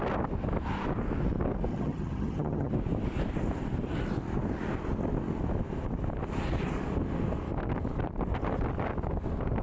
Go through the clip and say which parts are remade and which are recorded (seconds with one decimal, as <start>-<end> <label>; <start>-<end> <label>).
0.0-1.7 recorded; 1.7-2.7 remade; 2.7-9.6 recorded